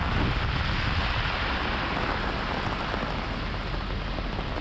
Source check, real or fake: real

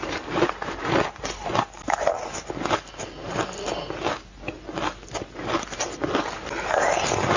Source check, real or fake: real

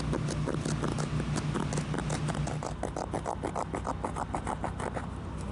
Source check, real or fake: real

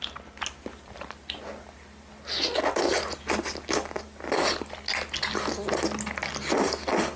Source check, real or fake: real